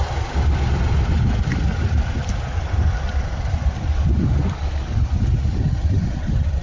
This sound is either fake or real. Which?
real